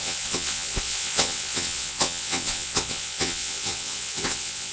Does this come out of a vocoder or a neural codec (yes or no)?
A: yes